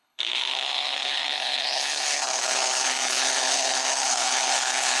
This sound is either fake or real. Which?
fake